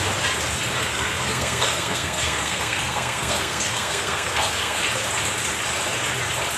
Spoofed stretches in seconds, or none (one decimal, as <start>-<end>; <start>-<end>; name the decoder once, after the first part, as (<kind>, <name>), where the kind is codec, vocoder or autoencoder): 0.8-4.8 (codec, SNAC)